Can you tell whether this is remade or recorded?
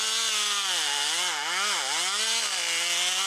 recorded